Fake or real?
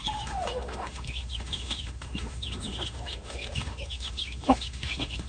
fake